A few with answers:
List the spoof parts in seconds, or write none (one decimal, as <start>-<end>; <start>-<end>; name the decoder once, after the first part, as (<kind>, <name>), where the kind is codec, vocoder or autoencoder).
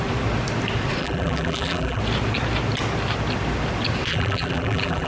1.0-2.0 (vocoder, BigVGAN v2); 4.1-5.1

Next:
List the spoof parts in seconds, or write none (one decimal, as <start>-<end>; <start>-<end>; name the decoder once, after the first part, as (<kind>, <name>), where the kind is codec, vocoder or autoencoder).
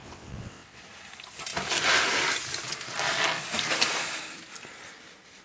0.0-0.8 (vocoder, WaveNeXt)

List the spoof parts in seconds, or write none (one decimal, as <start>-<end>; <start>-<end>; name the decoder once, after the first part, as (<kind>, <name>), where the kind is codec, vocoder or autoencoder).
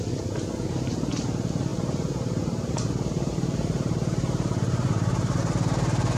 1.7-5.4 (vocoder, BigVGAN v2)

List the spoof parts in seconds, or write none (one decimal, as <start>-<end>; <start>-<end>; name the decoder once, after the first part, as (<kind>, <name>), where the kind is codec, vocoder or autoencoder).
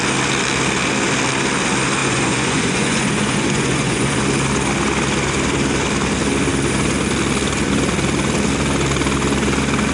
2.0-4.2 (vocoder, Vocos)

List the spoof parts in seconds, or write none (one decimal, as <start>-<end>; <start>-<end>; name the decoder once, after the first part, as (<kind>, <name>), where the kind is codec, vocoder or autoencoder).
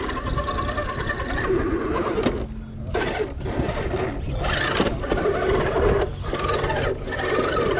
0.8-1.8 (vocoder, BigVGAN v2)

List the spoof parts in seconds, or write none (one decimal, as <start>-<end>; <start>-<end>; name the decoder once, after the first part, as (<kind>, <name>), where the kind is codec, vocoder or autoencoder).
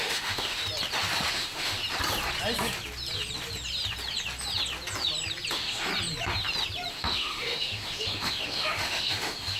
0.0-0.6 (autoencoder, DAC-VAE); 1.3-1.8; 5.5-5.9; 6.9-9.6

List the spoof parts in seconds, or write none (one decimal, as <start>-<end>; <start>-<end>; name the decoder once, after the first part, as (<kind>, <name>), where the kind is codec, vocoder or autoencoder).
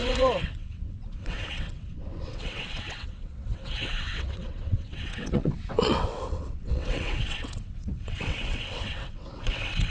0.0-9.9 (vocoder, WaveNeXt)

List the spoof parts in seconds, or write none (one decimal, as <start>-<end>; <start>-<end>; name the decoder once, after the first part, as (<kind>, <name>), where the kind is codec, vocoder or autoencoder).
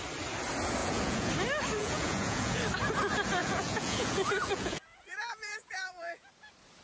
0.8-1.3 (vocoder, Vocos); 1.8-2.6; 3.4-6.3